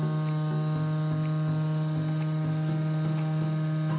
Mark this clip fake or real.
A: real